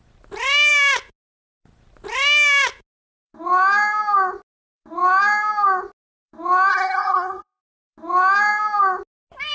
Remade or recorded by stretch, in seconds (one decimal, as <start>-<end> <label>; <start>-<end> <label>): 0.0-6.7 recorded; 6.7-7.6 remade; 7.6-9.5 recorded

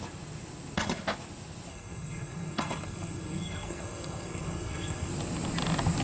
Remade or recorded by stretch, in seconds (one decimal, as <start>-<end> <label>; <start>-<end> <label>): 0.0-1.7 recorded; 1.7-5.1 remade; 5.1-6.0 recorded

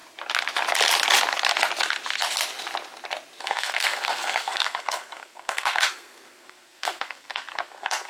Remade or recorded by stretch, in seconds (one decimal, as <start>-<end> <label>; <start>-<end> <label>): 0.0-3.4 recorded; 3.4-8.1 remade

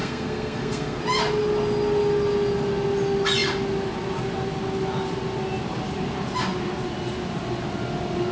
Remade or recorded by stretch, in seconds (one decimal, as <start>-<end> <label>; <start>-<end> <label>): 0.0-1.0 remade; 1.0-8.3 recorded

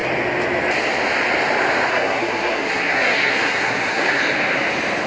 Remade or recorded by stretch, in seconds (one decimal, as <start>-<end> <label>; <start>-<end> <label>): 0.0-1.9 recorded; 1.9-4.2 remade; 4.2-5.1 recorded

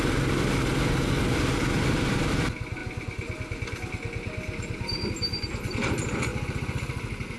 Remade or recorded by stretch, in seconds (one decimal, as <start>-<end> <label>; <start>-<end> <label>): 0.0-7.4 recorded